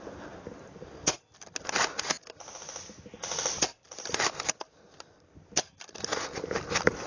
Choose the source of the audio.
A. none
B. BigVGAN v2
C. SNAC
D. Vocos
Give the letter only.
A